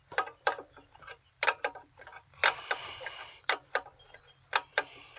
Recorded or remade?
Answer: remade